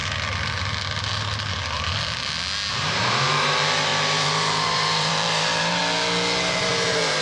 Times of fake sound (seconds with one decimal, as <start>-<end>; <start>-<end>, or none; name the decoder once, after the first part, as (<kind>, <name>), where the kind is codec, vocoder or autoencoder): 2.7-5.8 (vocoder, BigVGAN v2); 6.6-7.2